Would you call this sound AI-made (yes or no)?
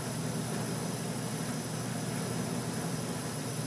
no